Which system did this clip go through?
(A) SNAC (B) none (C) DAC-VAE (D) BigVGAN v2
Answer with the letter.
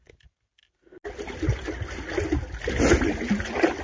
B